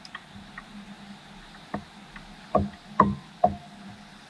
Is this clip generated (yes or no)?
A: no